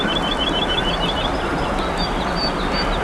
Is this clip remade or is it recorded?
recorded